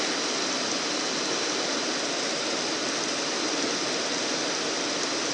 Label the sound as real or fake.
real